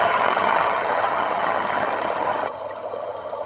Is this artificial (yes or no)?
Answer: yes